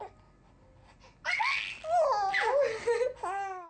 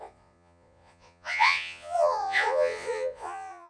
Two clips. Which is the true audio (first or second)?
first